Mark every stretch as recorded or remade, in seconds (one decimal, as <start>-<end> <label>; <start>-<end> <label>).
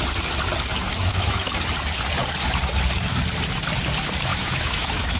0.0-1.0 recorded; 1.0-1.5 remade; 1.5-4.3 recorded; 4.3-5.2 remade